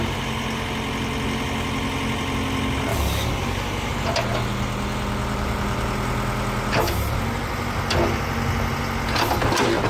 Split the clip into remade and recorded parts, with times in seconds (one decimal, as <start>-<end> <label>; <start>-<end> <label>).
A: 0.0-2.9 recorded; 2.9-3.9 remade; 3.9-9.9 recorded